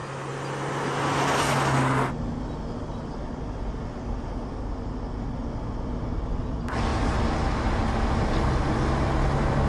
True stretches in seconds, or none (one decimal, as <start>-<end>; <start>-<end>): 0.0-9.7